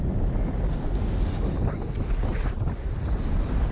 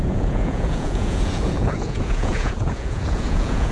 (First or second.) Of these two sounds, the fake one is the second